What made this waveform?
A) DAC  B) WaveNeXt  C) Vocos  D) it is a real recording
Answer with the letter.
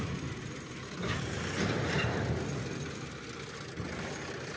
D